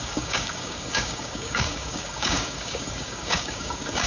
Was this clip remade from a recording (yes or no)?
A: yes